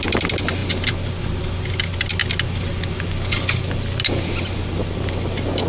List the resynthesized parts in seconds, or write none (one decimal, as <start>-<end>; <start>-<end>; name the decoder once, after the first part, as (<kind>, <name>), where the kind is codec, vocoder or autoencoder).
none